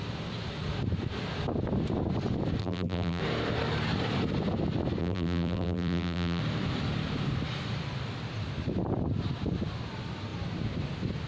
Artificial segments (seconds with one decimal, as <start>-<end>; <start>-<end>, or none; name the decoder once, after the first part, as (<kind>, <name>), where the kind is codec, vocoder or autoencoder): 2.6-3.2 (vocoder, BigVGAN v2); 5.0-6.4